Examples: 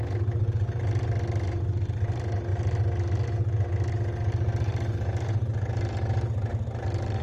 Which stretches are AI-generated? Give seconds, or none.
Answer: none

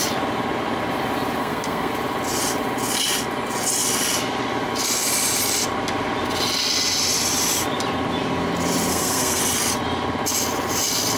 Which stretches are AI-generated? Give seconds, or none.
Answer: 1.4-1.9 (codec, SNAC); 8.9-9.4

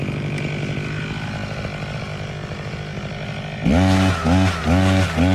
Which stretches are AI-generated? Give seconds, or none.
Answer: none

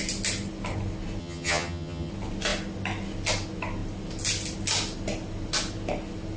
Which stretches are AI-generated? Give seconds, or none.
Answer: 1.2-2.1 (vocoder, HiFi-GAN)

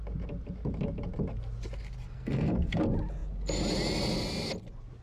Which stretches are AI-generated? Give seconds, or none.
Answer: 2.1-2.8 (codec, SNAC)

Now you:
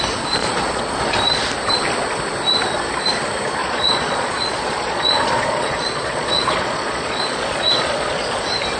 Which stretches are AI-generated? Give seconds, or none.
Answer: 0.4-1.0 (vocoder, Vocos); 3.6-8.4

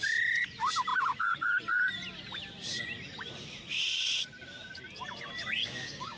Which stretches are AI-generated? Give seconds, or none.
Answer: 5.6-6.2 (codec, DAC)